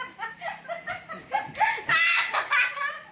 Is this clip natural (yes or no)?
yes